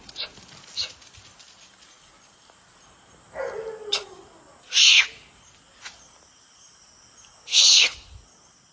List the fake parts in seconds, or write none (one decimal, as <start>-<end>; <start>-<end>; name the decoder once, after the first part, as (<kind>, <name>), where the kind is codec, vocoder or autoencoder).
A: none